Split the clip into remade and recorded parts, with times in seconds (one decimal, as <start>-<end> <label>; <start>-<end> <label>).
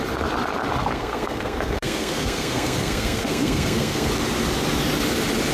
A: 0.0-0.8 recorded; 0.8-4.1 remade; 4.1-5.5 recorded